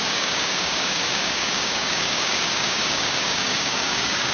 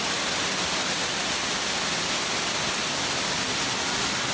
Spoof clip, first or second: first